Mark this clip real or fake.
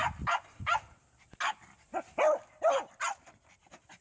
real